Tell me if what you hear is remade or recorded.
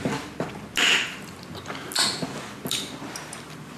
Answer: recorded